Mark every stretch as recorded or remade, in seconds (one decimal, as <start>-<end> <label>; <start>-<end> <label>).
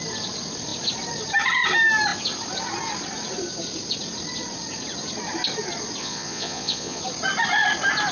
0.0-6.0 recorded; 6.0-7.0 remade; 7.0-8.1 recorded